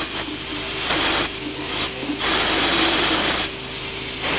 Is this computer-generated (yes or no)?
no